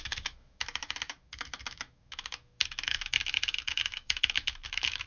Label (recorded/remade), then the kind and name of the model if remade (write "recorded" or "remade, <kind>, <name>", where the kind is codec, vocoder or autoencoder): remade, autoencoder, DAC-VAE